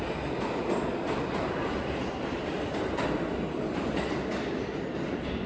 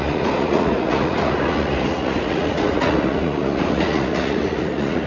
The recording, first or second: first